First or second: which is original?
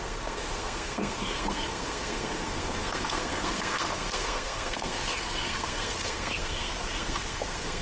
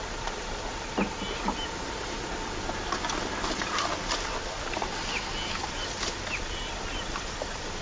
second